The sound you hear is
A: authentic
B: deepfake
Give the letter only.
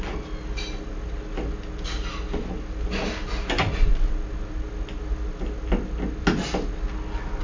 A